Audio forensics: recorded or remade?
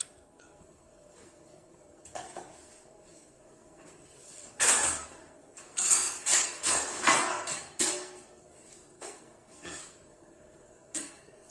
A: remade